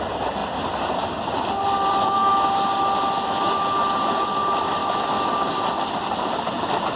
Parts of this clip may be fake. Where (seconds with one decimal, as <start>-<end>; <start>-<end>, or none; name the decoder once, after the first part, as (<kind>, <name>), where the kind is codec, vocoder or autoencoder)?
0.0-2.2 (vocoder, BigVGAN v2); 4.1-4.8; 6.2-7.0